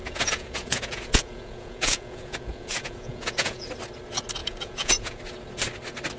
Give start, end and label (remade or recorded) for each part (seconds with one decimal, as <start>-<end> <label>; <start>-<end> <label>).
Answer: 0.0-3.7 remade; 3.7-4.4 recorded; 4.4-5.2 remade; 5.2-6.2 recorded